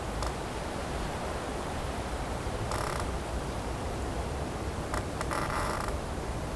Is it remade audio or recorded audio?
remade